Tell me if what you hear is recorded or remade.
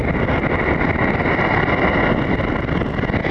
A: recorded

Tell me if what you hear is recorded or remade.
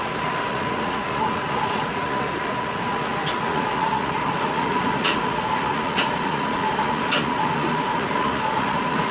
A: remade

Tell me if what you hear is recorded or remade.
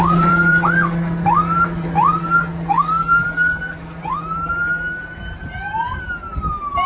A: recorded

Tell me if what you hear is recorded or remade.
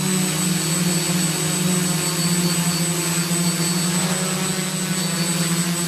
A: recorded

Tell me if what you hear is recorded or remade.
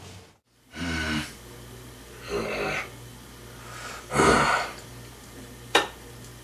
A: recorded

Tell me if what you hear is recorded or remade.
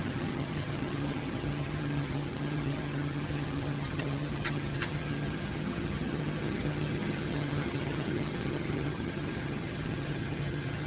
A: remade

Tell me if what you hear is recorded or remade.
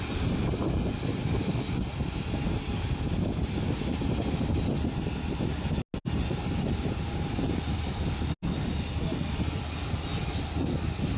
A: recorded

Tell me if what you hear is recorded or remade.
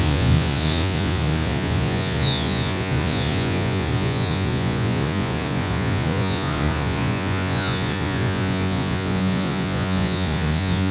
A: remade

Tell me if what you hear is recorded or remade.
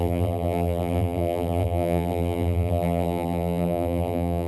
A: remade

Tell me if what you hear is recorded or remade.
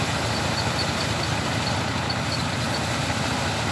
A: recorded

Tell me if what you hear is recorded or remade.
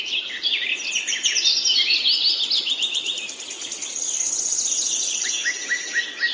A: recorded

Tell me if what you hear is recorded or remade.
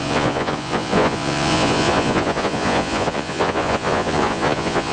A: remade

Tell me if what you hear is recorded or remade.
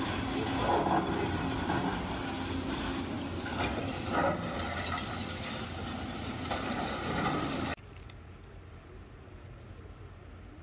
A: recorded